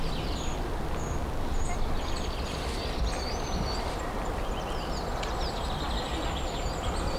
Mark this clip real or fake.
real